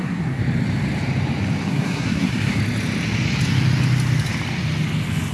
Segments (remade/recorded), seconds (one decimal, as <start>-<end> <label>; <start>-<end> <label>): 0.0-0.4 remade; 0.4-1.7 recorded; 1.7-2.6 remade; 2.6-5.3 recorded